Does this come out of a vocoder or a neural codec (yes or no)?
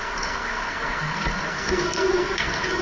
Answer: yes